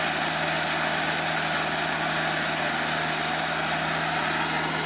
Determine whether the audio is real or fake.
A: real